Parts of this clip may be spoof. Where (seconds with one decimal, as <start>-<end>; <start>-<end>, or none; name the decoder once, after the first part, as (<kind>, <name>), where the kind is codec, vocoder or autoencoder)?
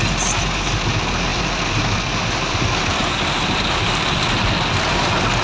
1.3-4.5 (vocoder, BigVGAN v2)